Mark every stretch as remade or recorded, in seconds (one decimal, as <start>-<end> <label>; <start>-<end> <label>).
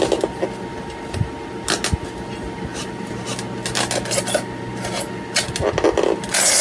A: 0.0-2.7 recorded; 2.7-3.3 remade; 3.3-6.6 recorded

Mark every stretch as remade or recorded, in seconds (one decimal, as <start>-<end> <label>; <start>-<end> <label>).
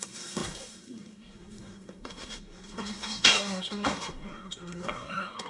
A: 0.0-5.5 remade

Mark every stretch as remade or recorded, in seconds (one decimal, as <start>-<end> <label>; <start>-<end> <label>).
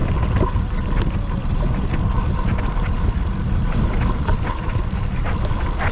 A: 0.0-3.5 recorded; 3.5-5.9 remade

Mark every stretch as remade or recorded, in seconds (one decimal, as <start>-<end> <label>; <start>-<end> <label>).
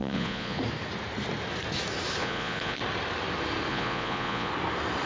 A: 0.0-0.6 remade; 0.6-2.2 recorded; 2.2-2.8 remade; 2.8-3.7 recorded; 3.7-4.5 remade; 4.5-5.1 recorded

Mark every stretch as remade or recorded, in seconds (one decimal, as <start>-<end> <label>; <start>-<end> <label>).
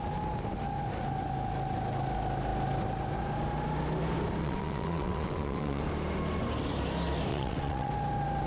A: 0.0-4.4 recorded; 4.4-5.8 remade; 5.8-7.3 recorded; 7.3-7.9 remade; 7.9-8.5 recorded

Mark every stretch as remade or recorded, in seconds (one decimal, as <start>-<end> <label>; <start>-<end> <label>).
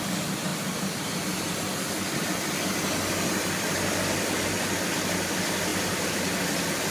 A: 0.0-5.7 recorded; 5.7-6.3 remade; 6.3-6.9 recorded